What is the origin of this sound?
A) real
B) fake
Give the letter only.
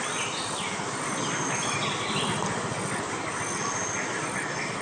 A